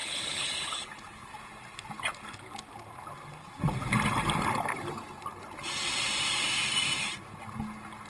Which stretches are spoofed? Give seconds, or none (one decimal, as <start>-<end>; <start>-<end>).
0.0-1.3